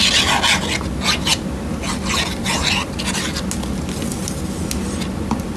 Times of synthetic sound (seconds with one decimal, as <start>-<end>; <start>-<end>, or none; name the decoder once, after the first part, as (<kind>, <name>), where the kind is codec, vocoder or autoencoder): none